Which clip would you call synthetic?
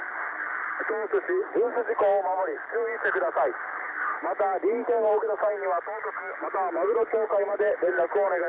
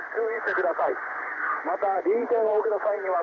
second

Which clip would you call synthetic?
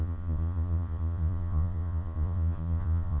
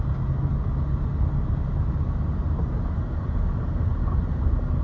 first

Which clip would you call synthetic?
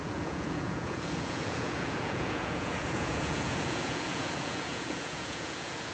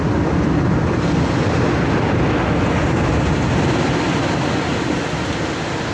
first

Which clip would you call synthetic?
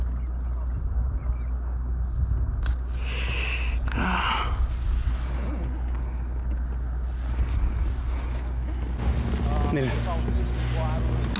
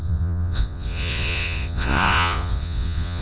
second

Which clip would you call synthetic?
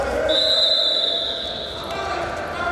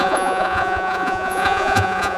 second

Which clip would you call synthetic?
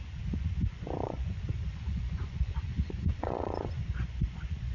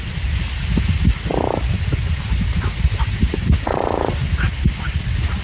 first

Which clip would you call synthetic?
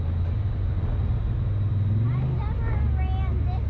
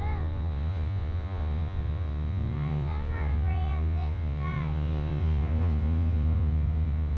second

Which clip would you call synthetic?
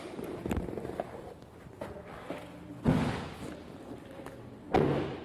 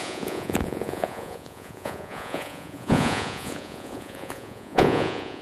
second